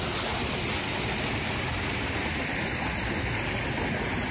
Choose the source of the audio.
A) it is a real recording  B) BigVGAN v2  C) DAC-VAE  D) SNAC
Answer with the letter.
A